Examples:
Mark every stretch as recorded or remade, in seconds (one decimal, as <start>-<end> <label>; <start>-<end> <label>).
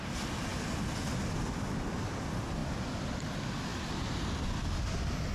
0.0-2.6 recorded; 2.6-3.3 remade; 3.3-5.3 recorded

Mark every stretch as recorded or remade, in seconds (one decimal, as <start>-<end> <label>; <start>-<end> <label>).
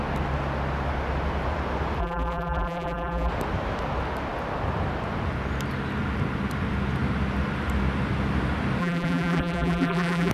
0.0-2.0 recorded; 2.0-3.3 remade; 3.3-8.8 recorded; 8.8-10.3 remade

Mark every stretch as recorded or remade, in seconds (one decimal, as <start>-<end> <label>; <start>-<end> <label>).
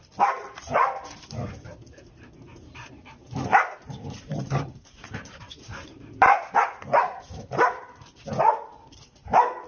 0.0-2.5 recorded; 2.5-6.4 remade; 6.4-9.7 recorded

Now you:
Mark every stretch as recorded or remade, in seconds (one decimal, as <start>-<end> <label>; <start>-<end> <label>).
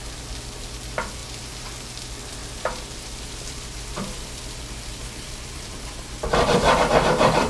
0.0-2.4 recorded; 2.4-6.9 remade; 6.9-7.5 recorded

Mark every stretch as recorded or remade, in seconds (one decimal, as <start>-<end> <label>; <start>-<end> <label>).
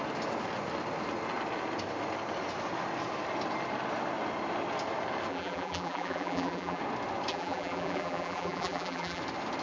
0.0-5.3 recorded; 5.3-6.8 remade; 6.8-7.3 recorded; 7.3-9.2 remade; 9.2-9.6 recorded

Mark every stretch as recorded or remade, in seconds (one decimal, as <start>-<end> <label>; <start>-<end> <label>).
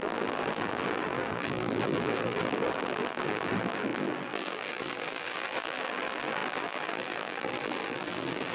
0.0-8.5 remade